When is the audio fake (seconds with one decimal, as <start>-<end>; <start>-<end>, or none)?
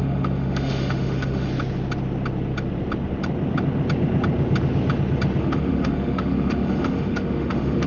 0.0-1.5; 5.4-7.9